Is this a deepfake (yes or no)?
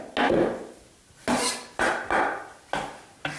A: no